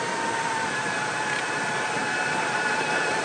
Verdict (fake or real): real